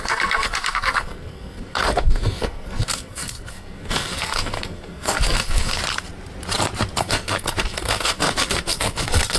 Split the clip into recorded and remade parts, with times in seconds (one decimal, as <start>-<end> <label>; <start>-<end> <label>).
0.0-5.8 remade; 5.8-7.0 recorded; 7.0-9.4 remade